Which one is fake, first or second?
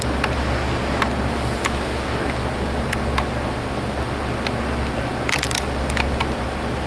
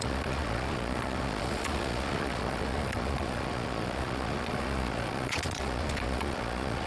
second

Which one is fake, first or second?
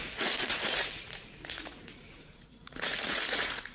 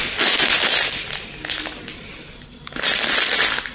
first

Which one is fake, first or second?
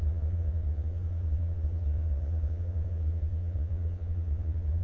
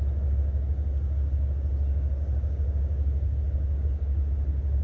first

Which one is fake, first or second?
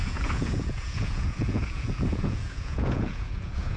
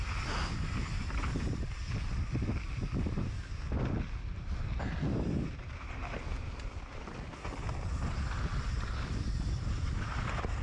first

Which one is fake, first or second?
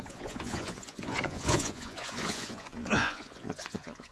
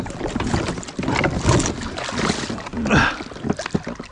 first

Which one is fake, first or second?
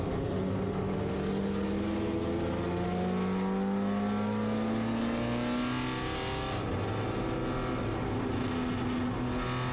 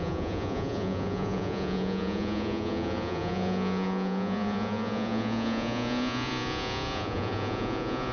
second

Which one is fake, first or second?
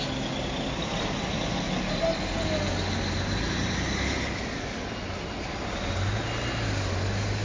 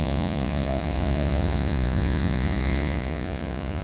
second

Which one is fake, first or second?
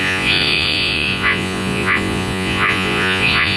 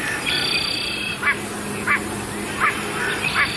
first